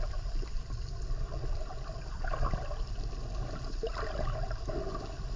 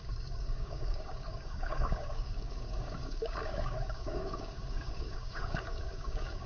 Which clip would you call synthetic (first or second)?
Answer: second